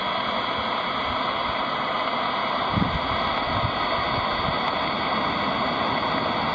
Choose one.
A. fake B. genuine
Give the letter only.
B